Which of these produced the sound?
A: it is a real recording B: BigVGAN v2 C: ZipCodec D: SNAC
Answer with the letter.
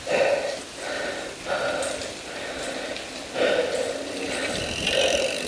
A